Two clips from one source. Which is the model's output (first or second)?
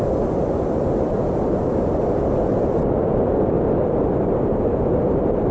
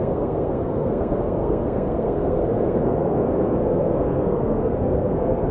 second